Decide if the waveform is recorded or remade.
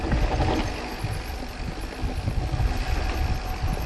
recorded